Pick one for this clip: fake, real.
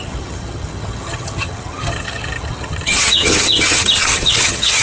fake